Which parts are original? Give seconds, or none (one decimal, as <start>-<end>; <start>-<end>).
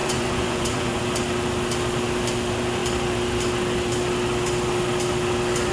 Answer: 1.0-5.7